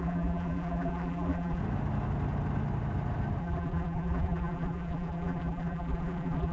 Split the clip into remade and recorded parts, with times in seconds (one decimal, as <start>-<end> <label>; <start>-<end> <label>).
0.0-1.6 remade; 1.6-3.4 recorded; 3.4-6.5 remade